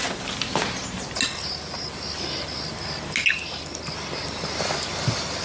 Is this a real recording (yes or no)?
yes